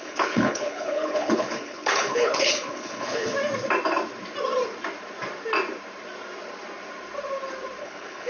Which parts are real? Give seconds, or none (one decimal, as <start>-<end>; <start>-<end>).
3.3-7.8